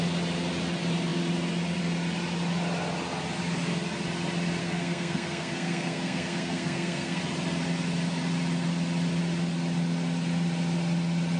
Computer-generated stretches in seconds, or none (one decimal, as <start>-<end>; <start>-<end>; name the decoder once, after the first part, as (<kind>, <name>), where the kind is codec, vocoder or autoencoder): 4.6-7.2 (codec, SNAC)